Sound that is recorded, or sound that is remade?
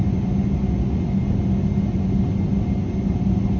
recorded